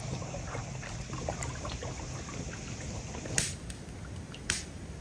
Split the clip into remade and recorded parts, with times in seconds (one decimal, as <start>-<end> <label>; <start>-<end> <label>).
0.0-5.0 recorded